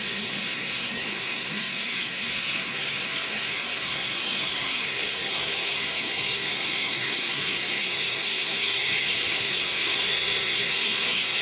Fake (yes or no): yes